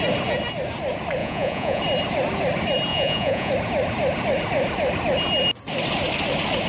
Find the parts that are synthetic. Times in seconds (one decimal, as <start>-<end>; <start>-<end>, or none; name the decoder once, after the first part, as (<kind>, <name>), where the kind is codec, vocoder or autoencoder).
1.2-1.8 (vocoder, Vocos); 2.9-3.5